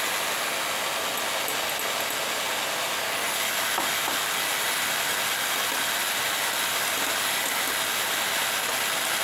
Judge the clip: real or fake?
real